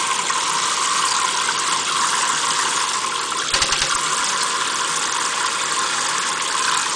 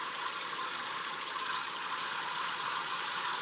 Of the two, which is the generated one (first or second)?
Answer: second